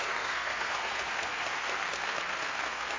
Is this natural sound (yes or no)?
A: no